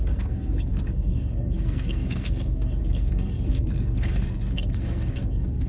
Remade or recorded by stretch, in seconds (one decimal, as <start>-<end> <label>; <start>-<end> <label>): 0.0-5.7 remade